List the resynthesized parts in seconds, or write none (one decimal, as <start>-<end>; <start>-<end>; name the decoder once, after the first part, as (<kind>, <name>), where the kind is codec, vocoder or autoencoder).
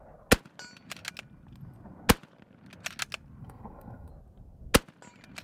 3.4-4.1 (codec, SNAC)